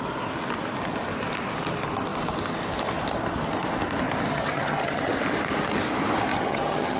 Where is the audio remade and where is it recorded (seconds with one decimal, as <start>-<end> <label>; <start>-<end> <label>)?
0.0-4.3 recorded; 4.3-5.1 remade; 5.1-6.3 recorded; 6.3-7.0 remade